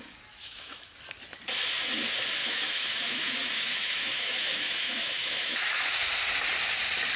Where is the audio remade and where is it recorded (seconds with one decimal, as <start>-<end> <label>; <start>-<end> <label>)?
0.0-0.4 recorded; 0.4-1.0 remade; 1.0-2.4 recorded; 2.4-5.9 remade; 5.9-7.2 recorded